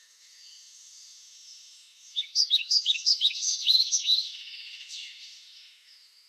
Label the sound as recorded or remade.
remade